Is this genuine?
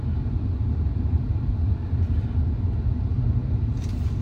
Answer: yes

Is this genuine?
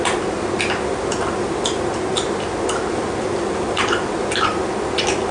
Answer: yes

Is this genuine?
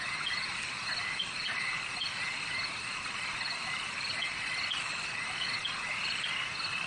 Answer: yes